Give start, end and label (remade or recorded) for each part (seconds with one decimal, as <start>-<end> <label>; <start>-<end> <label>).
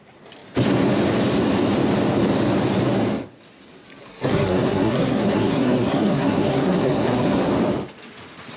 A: 0.0-4.1 recorded; 4.1-7.5 remade; 7.5-8.6 recorded